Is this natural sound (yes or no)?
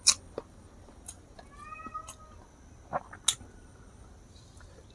yes